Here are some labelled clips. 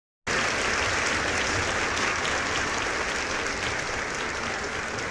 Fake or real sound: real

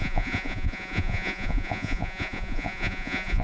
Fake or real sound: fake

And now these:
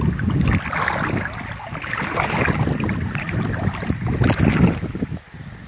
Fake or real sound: real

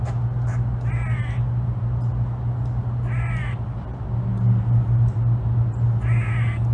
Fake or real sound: real